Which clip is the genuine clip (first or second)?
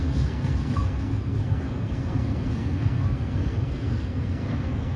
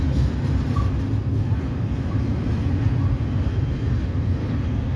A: second